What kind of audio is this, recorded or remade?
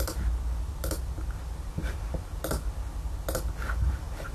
recorded